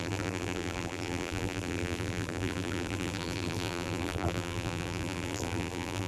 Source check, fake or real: fake